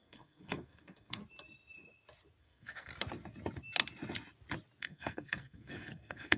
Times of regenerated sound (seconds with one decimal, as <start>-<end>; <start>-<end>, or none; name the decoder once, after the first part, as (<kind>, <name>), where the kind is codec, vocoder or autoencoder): 0.0-1.2 (codec, SNAC); 2.4-2.9; 4.8-6.4